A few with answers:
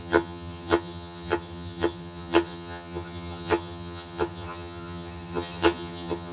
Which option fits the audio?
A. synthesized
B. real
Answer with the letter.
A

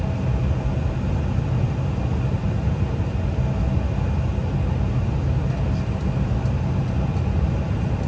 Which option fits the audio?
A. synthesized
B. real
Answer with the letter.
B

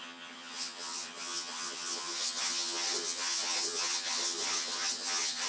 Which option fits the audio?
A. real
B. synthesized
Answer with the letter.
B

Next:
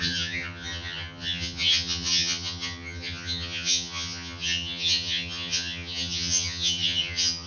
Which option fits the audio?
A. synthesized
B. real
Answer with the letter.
A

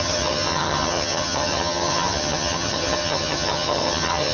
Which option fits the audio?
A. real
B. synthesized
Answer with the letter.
B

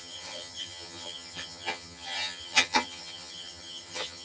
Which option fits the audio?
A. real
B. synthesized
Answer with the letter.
B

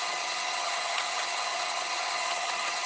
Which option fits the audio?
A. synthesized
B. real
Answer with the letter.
A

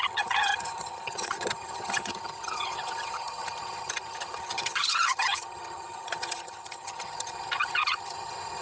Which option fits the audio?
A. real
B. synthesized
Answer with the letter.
B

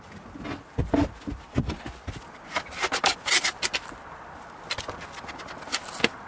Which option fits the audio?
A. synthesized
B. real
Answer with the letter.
B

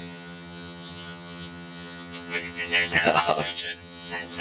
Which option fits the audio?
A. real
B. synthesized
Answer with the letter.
B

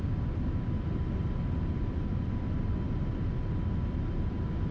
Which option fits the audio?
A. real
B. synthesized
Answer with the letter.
A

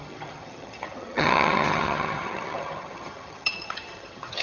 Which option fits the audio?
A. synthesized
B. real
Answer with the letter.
A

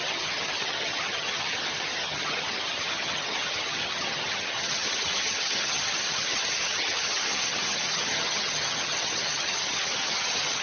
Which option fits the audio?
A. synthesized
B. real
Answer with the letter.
A